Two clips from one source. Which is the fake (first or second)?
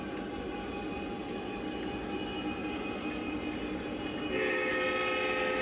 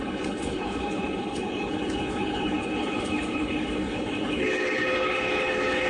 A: second